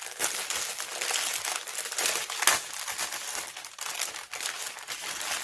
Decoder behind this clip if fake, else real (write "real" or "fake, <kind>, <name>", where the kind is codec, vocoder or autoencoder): real